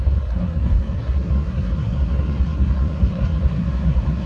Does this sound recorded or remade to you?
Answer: remade